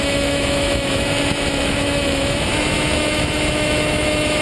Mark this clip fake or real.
fake